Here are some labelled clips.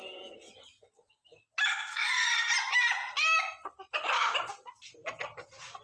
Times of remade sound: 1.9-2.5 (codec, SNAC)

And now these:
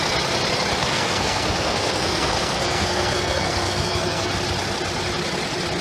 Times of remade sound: 0.8-4.3 (codec, SNAC)